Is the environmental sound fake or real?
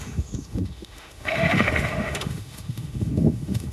fake